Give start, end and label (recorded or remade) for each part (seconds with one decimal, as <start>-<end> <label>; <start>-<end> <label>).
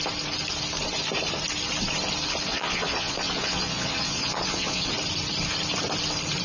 0.0-2.5 recorded; 2.5-4.9 remade; 4.9-6.4 recorded